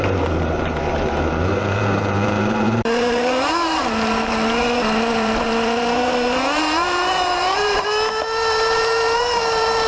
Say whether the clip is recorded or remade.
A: remade